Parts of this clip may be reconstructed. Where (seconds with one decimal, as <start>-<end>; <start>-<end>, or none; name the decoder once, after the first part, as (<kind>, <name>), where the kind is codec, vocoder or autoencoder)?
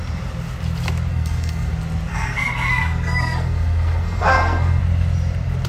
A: 1.1-1.7 (codec, SNAC); 2.1-4.8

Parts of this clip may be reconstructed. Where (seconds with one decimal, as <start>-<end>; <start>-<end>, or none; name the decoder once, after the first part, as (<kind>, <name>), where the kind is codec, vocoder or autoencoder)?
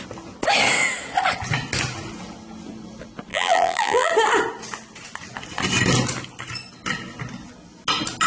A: 3.3-4.1 (vocoder, BigVGAN v2)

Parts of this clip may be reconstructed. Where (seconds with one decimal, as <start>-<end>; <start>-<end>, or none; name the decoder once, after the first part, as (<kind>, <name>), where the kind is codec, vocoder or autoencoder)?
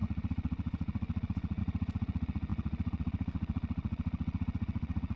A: 0.0-5.2 (vocoder, Vocos)